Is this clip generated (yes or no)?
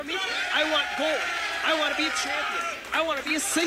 yes